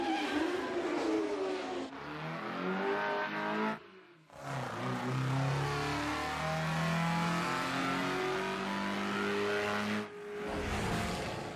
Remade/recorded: recorded